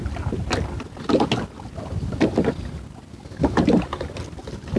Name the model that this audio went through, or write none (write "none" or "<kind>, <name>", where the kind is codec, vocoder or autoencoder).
none